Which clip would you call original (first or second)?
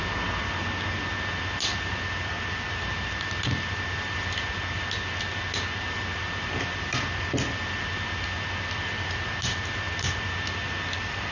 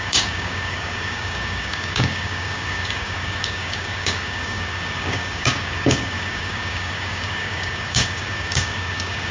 first